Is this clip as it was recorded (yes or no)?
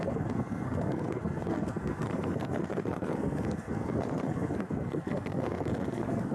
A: no